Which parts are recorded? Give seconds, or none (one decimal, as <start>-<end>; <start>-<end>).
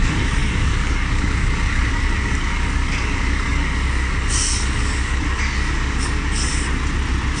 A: 6.5-7.4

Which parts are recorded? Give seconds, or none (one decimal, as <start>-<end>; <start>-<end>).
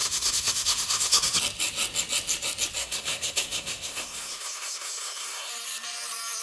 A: 1.4-2.8; 5.5-6.4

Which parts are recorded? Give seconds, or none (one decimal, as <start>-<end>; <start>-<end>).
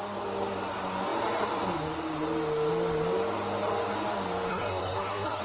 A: 0.0-4.5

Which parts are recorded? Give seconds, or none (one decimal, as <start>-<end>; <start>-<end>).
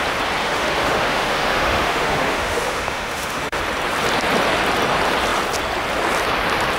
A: 0.0-0.4; 3.6-6.8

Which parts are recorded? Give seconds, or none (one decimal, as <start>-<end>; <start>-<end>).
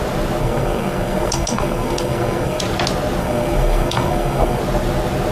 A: 0.0-0.4; 2.6-3.2; 4.6-5.3